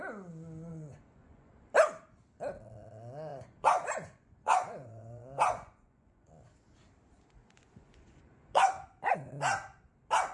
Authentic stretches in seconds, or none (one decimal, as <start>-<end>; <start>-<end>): 0.0-0.7; 1.5-3.3; 6.3-7.4; 9.3-10.3